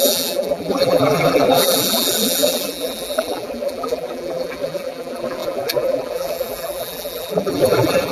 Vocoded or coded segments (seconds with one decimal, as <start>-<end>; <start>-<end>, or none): 0.0-8.1